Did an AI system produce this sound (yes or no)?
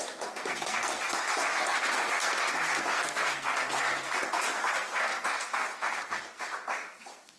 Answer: yes